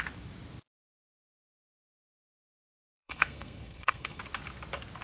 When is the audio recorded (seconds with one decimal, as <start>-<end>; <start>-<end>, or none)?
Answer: 0.0-1.2; 4.2-5.0